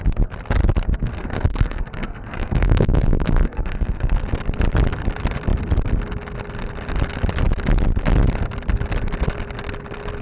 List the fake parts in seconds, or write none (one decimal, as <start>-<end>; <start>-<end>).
1.0-4.2